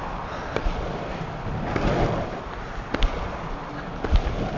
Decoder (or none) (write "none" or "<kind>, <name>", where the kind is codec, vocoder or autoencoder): none